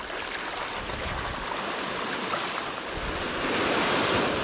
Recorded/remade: recorded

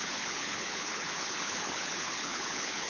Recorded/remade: remade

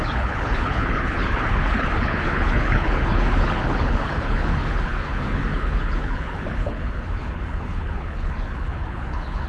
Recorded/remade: remade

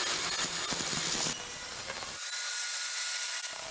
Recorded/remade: recorded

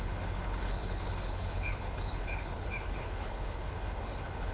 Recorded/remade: remade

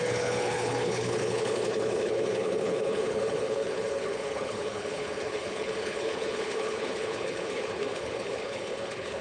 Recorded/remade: remade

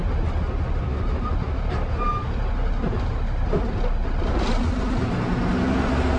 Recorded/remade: recorded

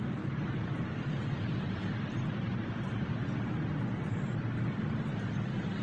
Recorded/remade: recorded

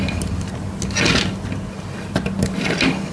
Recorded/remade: recorded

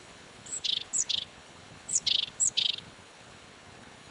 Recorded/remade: remade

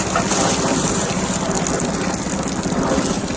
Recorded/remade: recorded